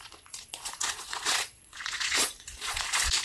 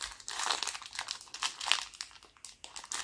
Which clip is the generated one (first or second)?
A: first